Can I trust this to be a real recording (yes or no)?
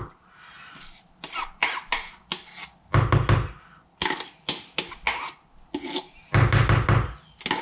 yes